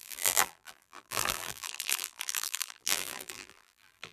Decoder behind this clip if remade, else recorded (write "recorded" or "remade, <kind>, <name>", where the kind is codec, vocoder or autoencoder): remade, vocoder, BigVGAN v2